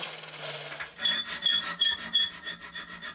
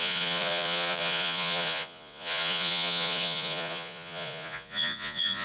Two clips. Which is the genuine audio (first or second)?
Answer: first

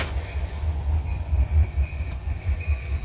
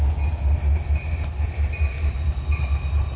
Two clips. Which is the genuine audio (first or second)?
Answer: second